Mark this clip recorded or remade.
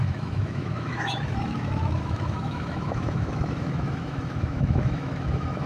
remade